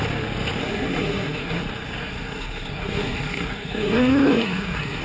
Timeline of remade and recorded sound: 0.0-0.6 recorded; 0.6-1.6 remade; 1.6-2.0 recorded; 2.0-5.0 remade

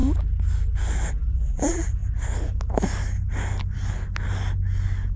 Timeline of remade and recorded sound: 0.0-1.1 recorded; 1.1-2.0 remade; 2.0-5.2 recorded

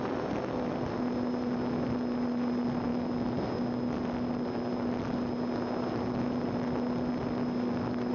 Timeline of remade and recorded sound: 0.0-8.1 recorded

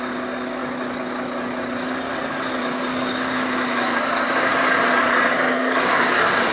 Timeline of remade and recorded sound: 0.0-0.6 remade; 0.6-2.6 recorded; 2.6-4.5 remade; 4.5-5.3 recorded; 5.3-6.5 remade

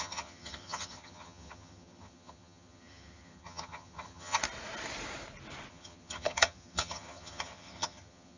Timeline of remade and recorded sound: 0.0-4.4 remade; 4.4-5.7 recorded; 5.7-8.4 remade

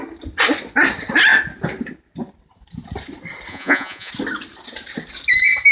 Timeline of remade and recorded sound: 0.0-3.5 recorded; 3.5-4.1 remade; 4.1-5.7 recorded